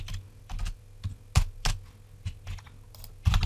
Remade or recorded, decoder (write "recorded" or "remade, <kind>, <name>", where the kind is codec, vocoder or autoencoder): recorded